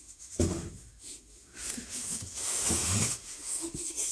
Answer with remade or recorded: remade